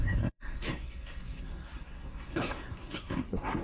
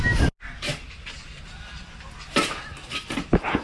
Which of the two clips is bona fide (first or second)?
second